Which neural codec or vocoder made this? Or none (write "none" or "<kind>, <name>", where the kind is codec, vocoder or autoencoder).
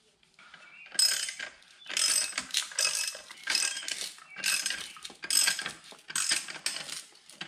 none